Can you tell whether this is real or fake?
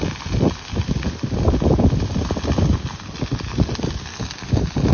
real